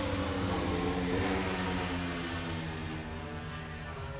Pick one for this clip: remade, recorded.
recorded